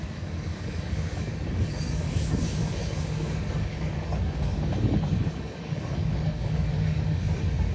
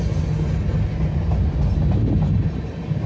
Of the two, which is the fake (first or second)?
first